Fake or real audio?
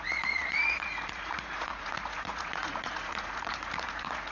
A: fake